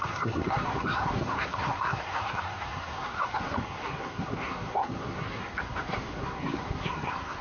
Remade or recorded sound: remade